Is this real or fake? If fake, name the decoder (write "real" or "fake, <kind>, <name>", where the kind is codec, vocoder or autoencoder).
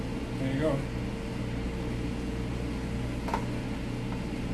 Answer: real